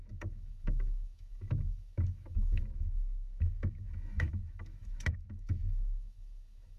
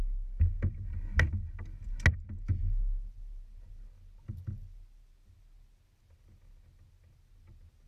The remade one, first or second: first